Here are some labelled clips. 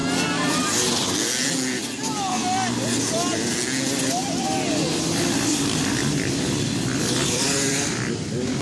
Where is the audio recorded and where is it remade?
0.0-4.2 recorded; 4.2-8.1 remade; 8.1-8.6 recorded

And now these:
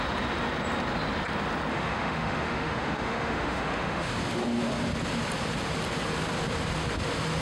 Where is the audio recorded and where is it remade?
0.0-1.7 recorded; 1.7-4.1 remade; 4.1-7.4 recorded

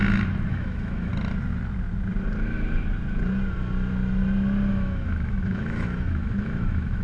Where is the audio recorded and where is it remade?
0.0-0.5 recorded; 0.5-1.1 remade; 1.1-4.7 recorded; 4.7-7.0 remade